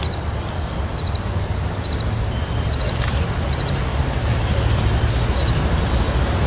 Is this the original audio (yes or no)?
yes